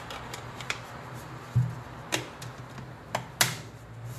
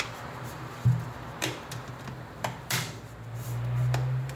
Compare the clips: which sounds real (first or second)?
first